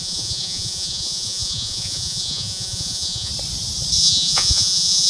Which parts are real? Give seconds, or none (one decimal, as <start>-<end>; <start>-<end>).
3.3-4.0